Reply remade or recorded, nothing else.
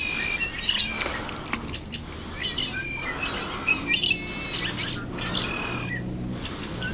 recorded